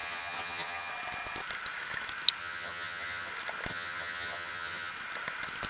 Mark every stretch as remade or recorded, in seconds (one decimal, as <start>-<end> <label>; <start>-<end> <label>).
0.0-0.9 remade; 0.9-2.4 recorded; 2.4-3.3 remade; 3.3-3.7 recorded; 3.7-4.9 remade; 4.9-5.7 recorded